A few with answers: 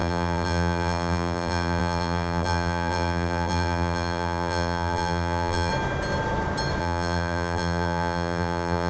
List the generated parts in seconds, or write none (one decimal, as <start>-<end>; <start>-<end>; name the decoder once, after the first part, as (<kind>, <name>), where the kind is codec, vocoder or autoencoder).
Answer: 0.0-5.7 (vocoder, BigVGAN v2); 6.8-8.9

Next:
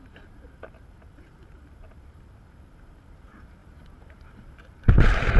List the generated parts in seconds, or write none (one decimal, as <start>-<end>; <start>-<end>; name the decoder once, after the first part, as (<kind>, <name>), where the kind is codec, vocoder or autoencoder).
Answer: 0.0-5.4 (vocoder, BigVGAN v2)

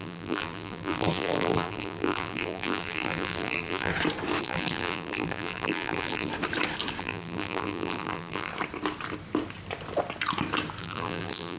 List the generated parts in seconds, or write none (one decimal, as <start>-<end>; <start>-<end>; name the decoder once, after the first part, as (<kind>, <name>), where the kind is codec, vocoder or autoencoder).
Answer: 0.0-3.9 (vocoder, BigVGAN v2); 4.4-6.3; 7.0-8.5; 10.8-11.6

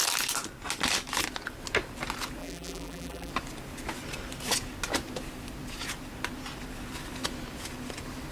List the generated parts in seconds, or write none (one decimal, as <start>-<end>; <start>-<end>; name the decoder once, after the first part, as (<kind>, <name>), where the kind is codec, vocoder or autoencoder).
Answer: 2.4-3.3 (vocoder, BigVGAN v2)

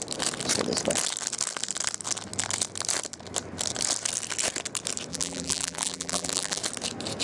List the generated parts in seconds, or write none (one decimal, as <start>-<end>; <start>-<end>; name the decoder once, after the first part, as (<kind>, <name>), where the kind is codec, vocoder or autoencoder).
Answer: 5.1-6.6 (vocoder, BigVGAN v2)